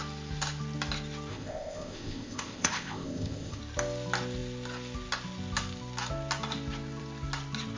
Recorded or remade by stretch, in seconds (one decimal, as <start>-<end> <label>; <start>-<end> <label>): 0.0-1.3 recorded; 1.3-3.6 remade; 3.6-7.8 recorded